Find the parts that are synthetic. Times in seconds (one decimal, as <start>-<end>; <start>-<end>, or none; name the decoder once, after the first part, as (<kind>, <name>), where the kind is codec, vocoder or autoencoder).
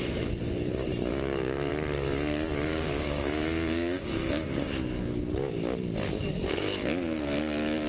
1.1-1.7 (codec, DAC); 2.7-5.2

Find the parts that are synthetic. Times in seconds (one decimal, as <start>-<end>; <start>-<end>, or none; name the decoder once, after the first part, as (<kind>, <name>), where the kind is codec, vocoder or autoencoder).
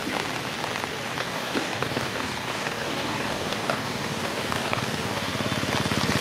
1.2-5.3 (codec, DAC)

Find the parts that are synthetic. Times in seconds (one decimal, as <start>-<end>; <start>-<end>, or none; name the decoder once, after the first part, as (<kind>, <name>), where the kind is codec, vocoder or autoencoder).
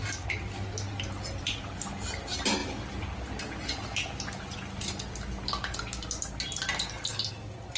none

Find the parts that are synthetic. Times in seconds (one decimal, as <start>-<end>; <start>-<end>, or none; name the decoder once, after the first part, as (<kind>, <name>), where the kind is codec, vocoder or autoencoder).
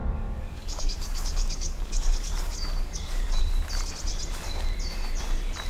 0.0-3.4 (codec, DAC)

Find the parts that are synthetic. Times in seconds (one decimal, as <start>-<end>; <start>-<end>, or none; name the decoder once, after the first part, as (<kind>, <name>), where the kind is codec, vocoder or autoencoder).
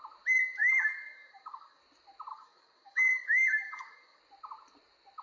0.6-1.8 (codec, DAC); 2.3-4.2